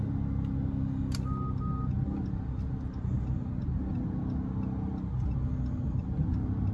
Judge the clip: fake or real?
real